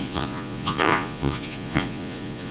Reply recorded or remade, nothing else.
remade